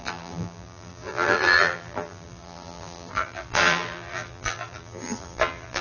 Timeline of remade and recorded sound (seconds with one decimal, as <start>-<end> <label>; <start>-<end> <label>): 0.0-5.8 remade